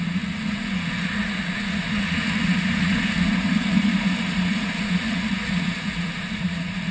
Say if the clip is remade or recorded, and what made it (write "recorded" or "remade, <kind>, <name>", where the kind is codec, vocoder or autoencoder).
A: remade, vocoder, Vocos